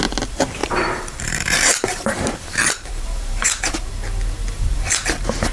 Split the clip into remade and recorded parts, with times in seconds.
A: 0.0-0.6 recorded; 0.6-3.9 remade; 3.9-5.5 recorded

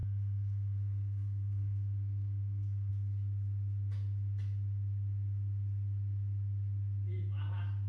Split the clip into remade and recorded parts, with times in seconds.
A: 0.0-2.9 remade; 2.9-7.9 recorded

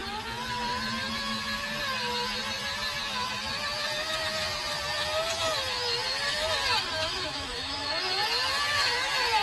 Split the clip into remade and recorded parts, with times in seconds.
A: 0.0-7.0 recorded; 7.0-7.9 remade; 7.9-9.4 recorded

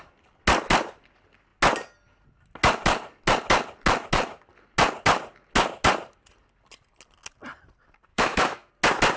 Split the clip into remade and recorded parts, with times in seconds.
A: 0.0-8.1 recorded; 8.1-8.7 remade; 8.7-9.2 recorded

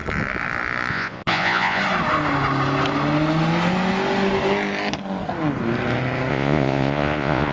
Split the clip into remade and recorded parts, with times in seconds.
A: 0.0-0.9 recorded; 0.9-1.8 remade; 1.8-6.3 recorded; 6.3-7.5 remade

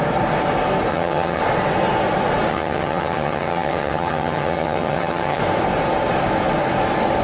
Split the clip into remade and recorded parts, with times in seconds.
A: 0.0-0.9 recorded; 0.9-1.4 remade; 1.4-2.5 recorded; 2.5-5.4 remade; 5.4-7.2 recorded

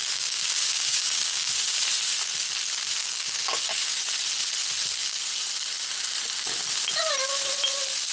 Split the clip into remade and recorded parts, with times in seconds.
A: 0.0-1.5 remade; 1.5-3.0 recorded; 3.0-4.0 remade; 4.0-8.1 recorded